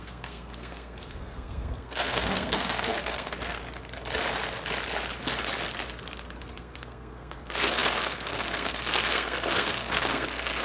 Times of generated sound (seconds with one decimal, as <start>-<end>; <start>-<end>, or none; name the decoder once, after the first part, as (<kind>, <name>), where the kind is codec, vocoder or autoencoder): 0.0-3.6 (codec, SNAC); 6.4-10.6